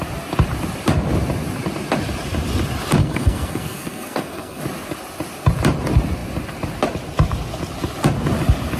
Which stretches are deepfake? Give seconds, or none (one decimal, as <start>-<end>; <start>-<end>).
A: 3.0-4.6